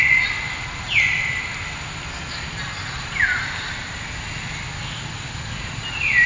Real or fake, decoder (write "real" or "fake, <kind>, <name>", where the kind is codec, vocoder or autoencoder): real